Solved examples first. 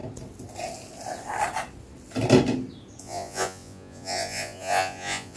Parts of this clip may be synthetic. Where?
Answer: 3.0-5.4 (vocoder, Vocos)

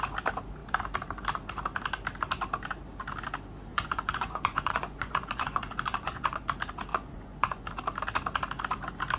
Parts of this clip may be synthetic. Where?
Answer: 3.7-6.4 (vocoder, Vocos); 6.9-7.7

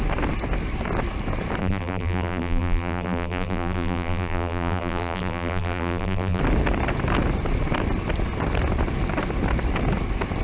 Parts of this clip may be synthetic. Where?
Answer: 1.6-6.4 (vocoder, BigVGAN v2)

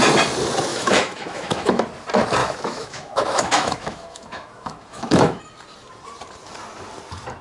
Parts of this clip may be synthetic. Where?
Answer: 0.7-1.8 (autoencoder, DAC-VAE); 2.4-5.4

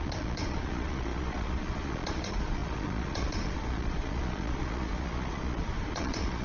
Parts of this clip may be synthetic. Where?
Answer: 0.0-6.4 (vocoder, Vocos)

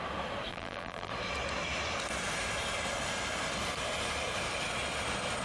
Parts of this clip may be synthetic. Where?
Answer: 0.5-1.1 (vocoder, BigVGAN v2)

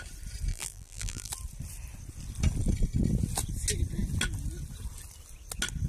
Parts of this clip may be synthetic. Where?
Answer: 0.5-1.3 (vocoder, BigVGAN v2)

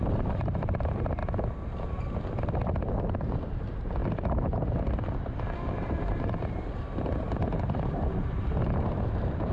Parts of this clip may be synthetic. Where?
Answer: 0.0-1.2 (vocoder, BigVGAN v2); 3.0-4.0; 4.7-9.5